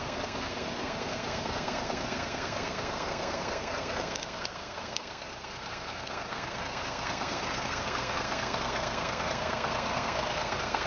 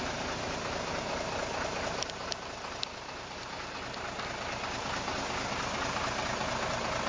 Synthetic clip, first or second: first